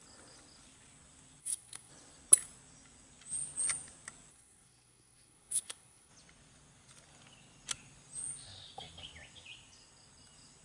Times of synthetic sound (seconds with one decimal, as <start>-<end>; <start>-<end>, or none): 1.4-1.9; 4.3-6.1